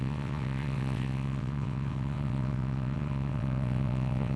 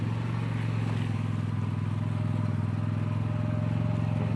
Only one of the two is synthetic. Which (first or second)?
first